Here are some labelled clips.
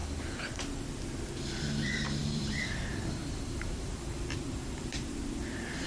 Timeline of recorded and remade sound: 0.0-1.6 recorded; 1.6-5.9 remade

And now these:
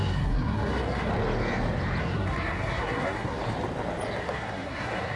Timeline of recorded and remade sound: 0.0-1.1 remade; 1.1-2.0 recorded; 2.0-3.4 remade; 3.4-4.2 recorded; 4.2-5.2 remade

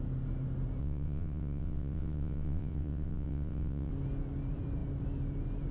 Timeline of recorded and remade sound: 0.0-0.8 recorded; 0.8-3.9 remade; 3.9-5.7 recorded

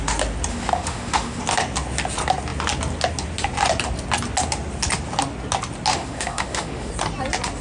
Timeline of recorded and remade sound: 0.0-0.5 recorded; 0.5-1.4 remade; 1.4-5.9 recorded; 5.9-6.9 remade; 6.9-7.6 recorded